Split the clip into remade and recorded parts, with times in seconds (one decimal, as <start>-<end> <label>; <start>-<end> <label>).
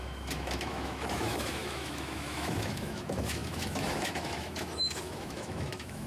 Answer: 0.0-6.1 remade